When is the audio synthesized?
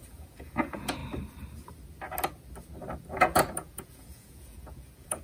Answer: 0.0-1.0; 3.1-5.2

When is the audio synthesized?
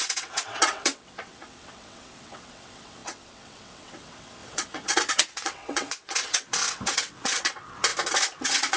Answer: 0.0-7.9; 8.4-8.8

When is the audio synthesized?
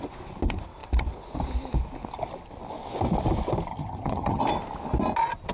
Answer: 3.7-4.4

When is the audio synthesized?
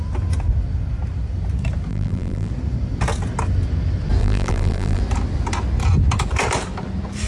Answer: 1.9-2.5; 4.2-5.0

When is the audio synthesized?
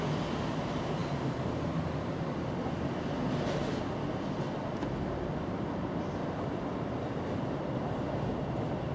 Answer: none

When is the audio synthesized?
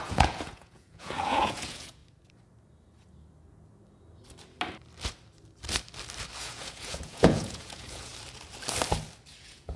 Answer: 0.0-2.0; 6.4-8.1; 9.4-9.8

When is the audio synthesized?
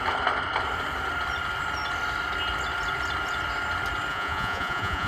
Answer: 4.1-5.1